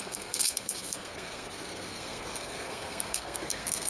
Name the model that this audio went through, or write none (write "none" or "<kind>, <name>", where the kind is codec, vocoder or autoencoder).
codec, SNAC